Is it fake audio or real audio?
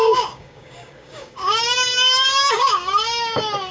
fake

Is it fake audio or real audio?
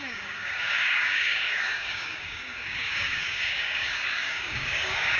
fake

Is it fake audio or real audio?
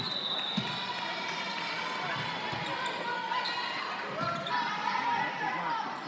real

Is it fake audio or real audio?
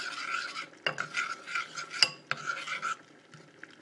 real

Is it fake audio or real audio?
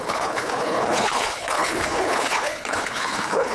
fake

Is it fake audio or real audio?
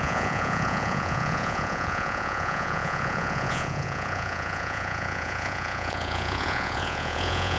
fake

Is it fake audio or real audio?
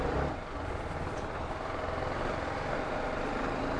fake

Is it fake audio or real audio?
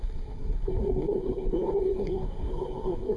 fake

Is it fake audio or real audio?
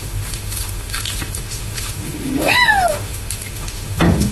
fake